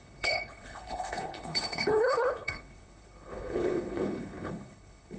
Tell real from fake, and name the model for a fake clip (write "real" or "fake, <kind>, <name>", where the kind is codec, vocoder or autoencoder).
fake, codec, HILCodec